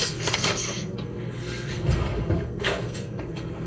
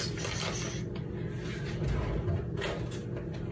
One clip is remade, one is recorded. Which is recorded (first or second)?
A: second